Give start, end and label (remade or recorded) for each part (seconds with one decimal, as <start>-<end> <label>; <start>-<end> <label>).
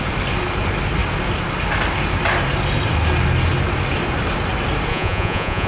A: 0.0-4.9 recorded; 4.9-5.7 remade